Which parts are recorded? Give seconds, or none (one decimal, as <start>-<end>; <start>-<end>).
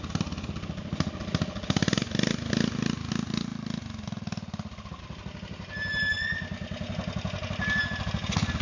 0.0-8.6